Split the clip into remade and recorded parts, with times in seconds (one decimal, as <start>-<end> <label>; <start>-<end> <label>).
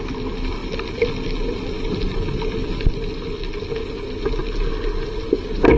0.0-5.8 recorded